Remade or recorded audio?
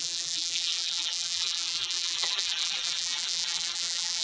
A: remade